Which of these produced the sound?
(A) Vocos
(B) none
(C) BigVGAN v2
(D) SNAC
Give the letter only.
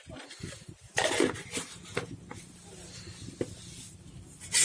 B